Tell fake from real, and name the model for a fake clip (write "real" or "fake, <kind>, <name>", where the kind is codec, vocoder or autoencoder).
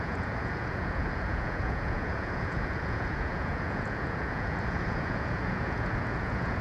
fake, vocoder, Vocos